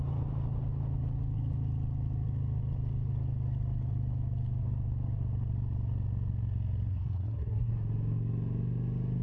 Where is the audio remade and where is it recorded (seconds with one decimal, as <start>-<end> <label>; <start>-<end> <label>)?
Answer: 0.0-6.9 recorded; 6.9-7.7 remade; 7.7-9.2 recorded